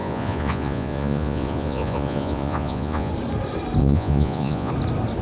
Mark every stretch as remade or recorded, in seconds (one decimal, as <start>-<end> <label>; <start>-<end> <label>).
0.0-3.1 remade; 3.1-3.8 recorded; 3.8-4.7 remade; 4.7-5.2 recorded